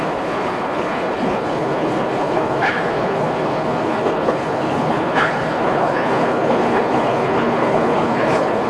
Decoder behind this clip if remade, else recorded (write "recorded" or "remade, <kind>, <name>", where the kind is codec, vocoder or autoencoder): remade, codec, HILCodec